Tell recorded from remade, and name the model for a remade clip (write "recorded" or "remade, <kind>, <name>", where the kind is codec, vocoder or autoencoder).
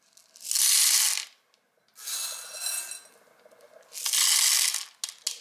recorded